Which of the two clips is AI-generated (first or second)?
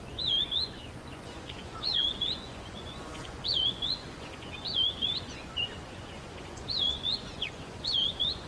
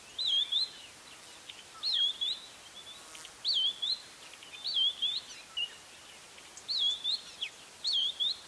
first